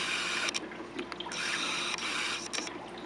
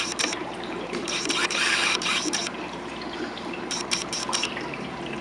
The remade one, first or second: second